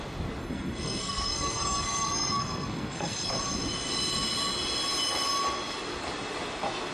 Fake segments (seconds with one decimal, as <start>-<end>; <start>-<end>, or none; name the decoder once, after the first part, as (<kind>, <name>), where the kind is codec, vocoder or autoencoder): 0.4-3.3 (codec, SNAC)